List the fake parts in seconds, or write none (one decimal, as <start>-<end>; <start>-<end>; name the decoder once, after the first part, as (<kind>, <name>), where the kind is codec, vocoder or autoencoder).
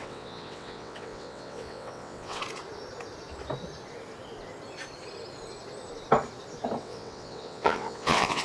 0.0-2.4 (vocoder, WaveNeXt); 6.8-8.4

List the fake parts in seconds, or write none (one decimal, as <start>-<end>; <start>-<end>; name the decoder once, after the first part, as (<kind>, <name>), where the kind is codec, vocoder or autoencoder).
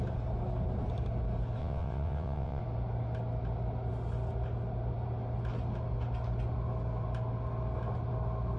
1.6-2.6 (vocoder, WaveNeXt)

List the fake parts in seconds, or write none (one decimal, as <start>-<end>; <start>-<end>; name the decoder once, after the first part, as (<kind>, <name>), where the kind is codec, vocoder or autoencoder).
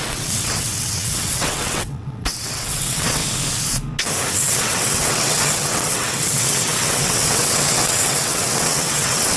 0.0-3.2 (vocoder, WaveNeXt); 4.3-9.4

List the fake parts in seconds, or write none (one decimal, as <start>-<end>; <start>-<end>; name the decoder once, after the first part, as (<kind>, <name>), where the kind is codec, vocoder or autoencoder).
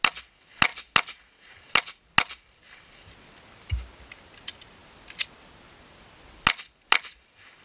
none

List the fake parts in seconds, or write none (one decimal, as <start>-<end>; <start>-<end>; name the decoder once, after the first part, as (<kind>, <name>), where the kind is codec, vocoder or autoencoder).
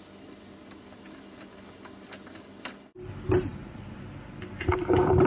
none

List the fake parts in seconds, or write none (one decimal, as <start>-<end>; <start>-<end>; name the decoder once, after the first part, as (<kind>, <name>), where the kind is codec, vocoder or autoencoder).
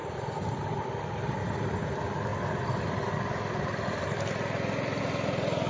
none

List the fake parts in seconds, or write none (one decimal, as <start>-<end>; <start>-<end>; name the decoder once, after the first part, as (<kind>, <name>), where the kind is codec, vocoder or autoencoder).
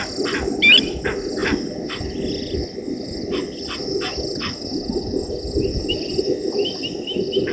none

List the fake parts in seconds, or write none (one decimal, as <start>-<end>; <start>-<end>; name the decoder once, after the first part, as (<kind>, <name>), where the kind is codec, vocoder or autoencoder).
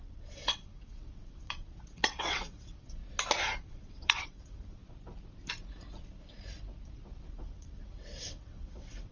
0.0-3.0 (vocoder, WaveNeXt); 3.7-4.8; 7.3-9.1